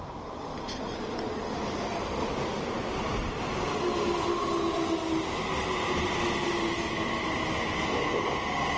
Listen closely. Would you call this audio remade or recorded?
recorded